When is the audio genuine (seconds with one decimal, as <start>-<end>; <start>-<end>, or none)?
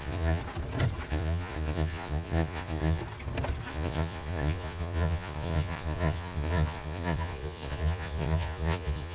0.4-1.1; 3.0-3.7